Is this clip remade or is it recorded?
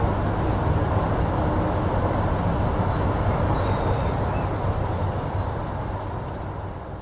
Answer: recorded